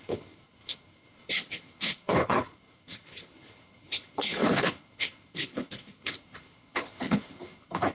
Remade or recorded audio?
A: remade